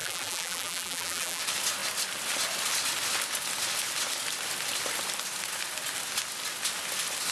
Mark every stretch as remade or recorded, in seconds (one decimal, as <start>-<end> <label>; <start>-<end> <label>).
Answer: 0.0-1.4 remade; 1.4-7.3 recorded